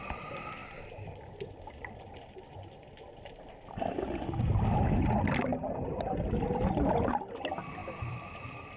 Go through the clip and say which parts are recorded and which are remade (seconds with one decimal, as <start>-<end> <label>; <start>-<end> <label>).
0.0-0.6 recorded; 0.6-1.5 remade; 1.5-7.8 recorded; 7.8-8.4 remade; 8.4-8.8 recorded

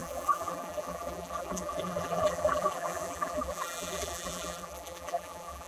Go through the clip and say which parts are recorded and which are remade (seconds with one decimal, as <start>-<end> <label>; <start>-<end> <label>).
0.0-5.7 remade

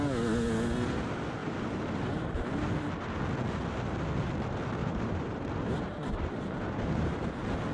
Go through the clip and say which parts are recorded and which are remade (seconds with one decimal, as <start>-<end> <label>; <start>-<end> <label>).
0.0-4.8 recorded; 4.8-7.2 remade; 7.2-7.7 recorded

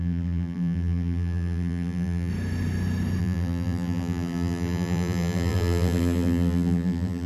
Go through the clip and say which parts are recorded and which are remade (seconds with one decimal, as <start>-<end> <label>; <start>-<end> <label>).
0.0-2.3 remade; 2.3-3.2 recorded; 3.2-7.3 remade